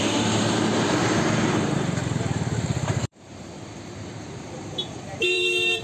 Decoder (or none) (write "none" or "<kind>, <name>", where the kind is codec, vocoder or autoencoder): vocoder, BigVGAN v2